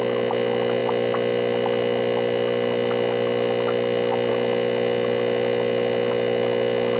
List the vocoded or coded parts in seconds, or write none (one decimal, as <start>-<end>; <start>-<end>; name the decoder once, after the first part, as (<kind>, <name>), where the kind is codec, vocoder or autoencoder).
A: none